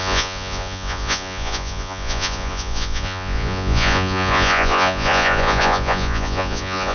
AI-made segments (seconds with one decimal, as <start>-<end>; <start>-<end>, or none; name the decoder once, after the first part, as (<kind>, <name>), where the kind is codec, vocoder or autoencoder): 0.0-6.9 (vocoder, Vocos)

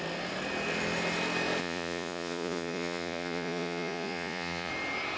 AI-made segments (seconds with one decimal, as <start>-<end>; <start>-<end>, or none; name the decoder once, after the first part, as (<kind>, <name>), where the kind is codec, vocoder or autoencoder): 1.6-4.7 (vocoder, Vocos)

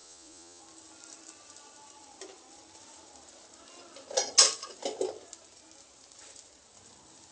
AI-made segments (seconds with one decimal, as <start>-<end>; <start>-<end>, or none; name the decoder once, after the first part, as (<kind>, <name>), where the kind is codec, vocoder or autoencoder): 0.0-0.6 (vocoder, Vocos)

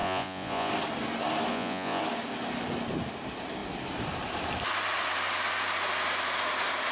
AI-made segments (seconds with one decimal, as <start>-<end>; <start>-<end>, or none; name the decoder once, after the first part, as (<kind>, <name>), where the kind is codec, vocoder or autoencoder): 0.0-0.7 (vocoder, Vocos); 1.5-2.0

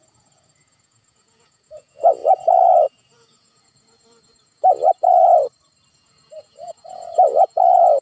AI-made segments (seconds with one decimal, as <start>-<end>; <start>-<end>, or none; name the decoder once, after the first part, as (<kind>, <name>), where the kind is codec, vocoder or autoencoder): 0.0-5.3 (vocoder, Vocos); 5.9-8.0

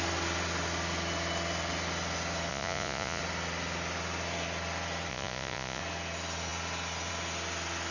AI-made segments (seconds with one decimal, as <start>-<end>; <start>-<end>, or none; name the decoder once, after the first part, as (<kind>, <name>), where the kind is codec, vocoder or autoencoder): 2.5-3.2 (vocoder, Vocos); 5.1-5.8

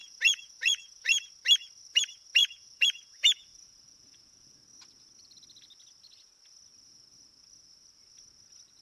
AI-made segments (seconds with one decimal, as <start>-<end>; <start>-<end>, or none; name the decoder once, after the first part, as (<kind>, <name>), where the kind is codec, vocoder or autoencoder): 0.0-1.2 (vocoder, Vocos); 2.4-4.6